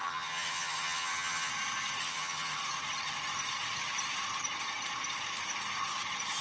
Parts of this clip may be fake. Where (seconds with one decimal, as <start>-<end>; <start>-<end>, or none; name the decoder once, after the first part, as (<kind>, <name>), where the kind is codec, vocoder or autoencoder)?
0.0-1.5 (vocoder, HiFi-GAN); 2.0-2.6